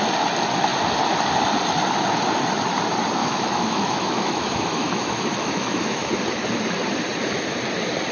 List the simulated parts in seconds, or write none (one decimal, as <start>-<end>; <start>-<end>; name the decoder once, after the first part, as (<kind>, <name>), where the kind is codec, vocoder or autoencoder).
3.2-6.1 (autoencoder, DAC-VAE)